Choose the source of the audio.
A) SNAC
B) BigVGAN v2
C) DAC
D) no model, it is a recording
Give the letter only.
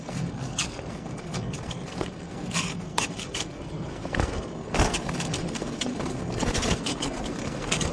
A